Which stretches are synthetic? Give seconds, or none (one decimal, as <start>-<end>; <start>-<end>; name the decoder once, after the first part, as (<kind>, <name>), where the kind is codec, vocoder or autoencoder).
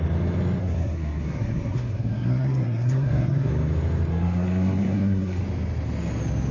0.6-3.5 (codec, SNAC); 4.1-5.4